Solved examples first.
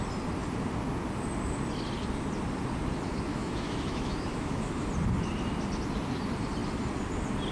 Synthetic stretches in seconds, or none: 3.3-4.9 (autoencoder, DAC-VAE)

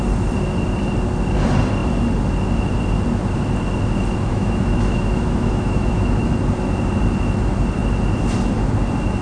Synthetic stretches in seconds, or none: 4.3-6.3 (autoencoder, DAC-VAE)